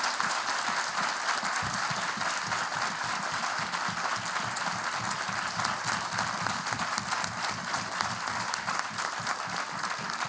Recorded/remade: recorded